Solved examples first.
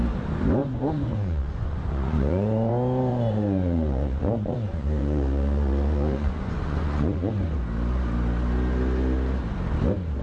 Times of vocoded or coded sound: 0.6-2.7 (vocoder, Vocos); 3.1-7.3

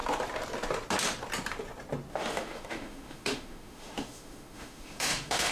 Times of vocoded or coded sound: 2.1-5.5 (autoencoder, DAC-VAE)

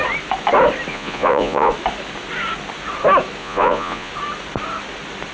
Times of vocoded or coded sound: 0.9-1.7 (vocoder, Vocos); 3.4-4.1

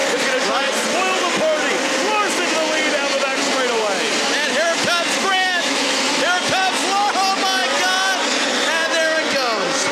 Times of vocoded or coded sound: 5.2-6.0 (autoencoder, DAC-VAE)